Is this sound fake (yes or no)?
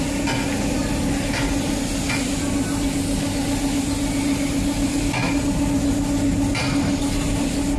no